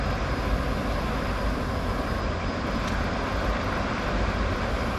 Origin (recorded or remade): recorded